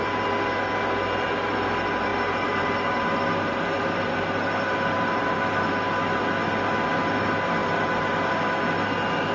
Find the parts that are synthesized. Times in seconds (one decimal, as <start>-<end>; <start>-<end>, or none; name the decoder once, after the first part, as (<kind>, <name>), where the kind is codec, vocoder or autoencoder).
2.1-5.7 (vocoder, BigVGAN v2); 7.6-8.3